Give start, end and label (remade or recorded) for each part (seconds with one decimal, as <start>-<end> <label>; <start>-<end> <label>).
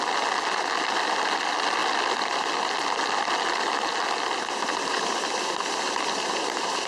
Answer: 0.0-6.9 recorded